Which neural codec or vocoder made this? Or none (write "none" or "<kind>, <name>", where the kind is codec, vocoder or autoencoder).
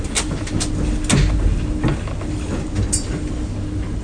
none